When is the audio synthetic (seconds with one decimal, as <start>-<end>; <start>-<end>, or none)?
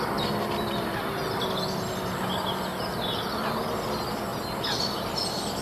2.7-3.5